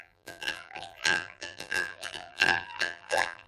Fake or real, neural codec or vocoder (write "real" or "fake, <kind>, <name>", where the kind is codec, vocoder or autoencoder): fake, vocoder, BigVGAN v2